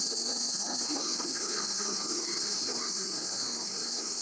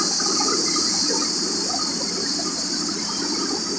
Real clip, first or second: second